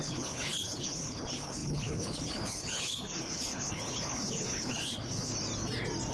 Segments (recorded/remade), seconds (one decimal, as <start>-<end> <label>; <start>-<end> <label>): 0.0-5.3 remade; 5.3-6.1 recorded